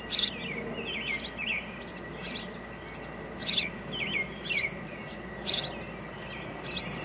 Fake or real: real